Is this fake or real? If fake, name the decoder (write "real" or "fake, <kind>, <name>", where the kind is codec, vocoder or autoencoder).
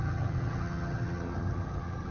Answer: fake, vocoder, HiFi-GAN